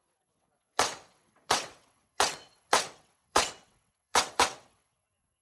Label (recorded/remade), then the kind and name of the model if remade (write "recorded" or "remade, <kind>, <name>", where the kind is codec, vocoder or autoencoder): remade, vocoder, WaveNeXt